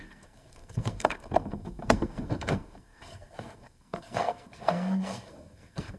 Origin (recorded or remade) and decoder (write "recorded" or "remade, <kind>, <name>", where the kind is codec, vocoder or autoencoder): remade, codec, SNAC